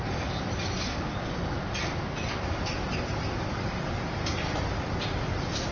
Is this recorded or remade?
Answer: recorded